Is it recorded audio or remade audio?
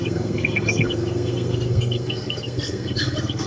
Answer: remade